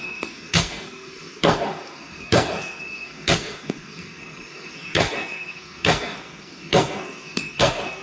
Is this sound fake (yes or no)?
yes